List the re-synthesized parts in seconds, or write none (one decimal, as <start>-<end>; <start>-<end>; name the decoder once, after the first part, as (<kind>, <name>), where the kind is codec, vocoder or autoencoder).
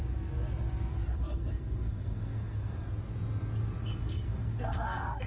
0.9-2.8 (codec, SNAC); 3.8-5.3